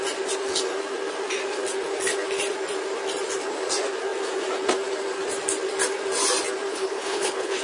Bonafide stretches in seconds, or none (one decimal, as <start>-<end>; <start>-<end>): 0.0-6.7